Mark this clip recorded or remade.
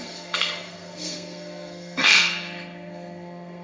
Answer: remade